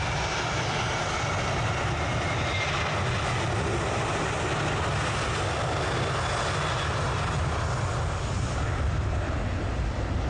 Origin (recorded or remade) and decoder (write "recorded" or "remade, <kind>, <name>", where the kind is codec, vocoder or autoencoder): recorded